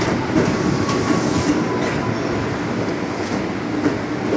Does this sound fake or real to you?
real